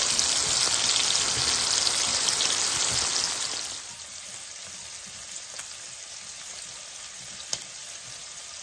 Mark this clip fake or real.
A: real